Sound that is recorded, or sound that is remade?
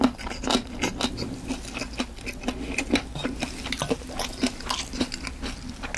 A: recorded